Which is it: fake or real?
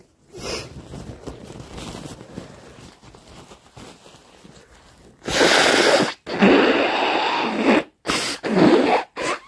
real